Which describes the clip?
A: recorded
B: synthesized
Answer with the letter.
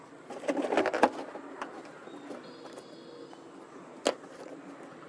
A